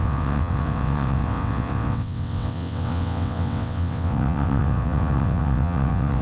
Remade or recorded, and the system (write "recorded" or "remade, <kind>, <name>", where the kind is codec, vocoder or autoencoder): remade, vocoder, WaveNeXt